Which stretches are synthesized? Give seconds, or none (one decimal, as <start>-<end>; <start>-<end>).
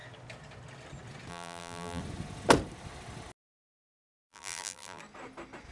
1.3-2.0; 4.2-5.0